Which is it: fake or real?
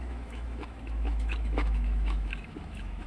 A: fake